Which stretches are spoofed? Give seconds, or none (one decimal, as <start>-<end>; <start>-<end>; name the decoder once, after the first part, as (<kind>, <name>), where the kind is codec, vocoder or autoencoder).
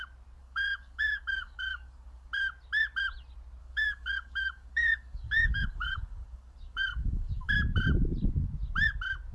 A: 0.4-2.3 (codec, DAC); 3.6-7.5